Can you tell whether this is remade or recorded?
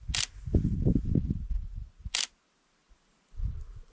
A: recorded